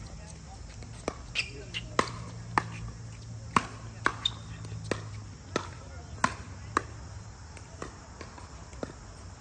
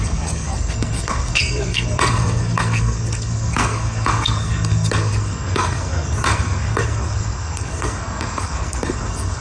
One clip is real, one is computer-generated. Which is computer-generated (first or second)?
second